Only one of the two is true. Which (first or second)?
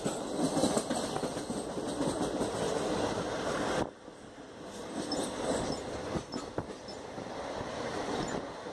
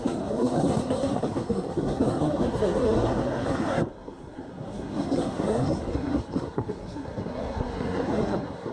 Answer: first